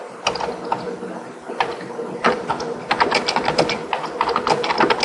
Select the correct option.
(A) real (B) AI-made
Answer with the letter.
A